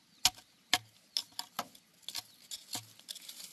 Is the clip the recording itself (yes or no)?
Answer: yes